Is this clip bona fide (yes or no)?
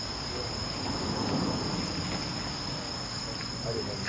yes